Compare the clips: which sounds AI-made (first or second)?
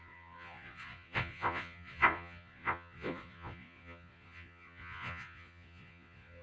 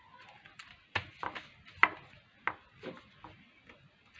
first